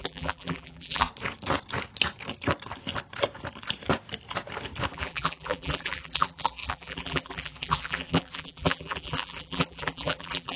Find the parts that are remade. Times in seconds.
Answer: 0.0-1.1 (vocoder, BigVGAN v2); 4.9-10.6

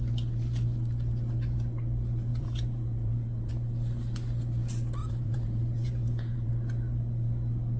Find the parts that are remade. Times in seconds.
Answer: 2.3-3.5 (vocoder, Vocos); 5.0-6.5

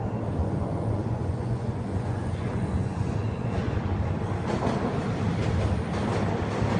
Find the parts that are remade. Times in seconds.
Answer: 0.4-3.7 (vocoder, Vocos)

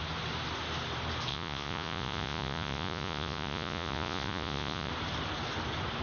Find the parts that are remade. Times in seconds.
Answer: 1.3-4.9 (vocoder, Vocos)

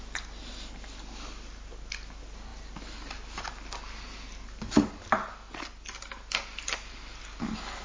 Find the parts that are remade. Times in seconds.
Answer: none

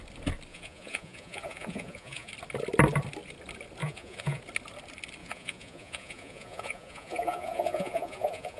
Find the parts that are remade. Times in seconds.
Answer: 0.5-2.3 (vocoder, Vocos); 3.8-4.4; 5.2-8.6

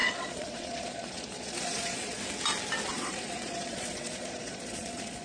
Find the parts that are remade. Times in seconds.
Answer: 0.0-2.2 (vocoder, Vocos); 2.9-5.2